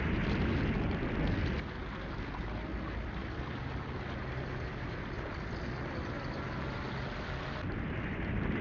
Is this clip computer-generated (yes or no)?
no